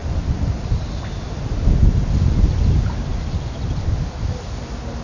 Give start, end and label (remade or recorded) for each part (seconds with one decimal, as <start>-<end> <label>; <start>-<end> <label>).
0.0-5.0 recorded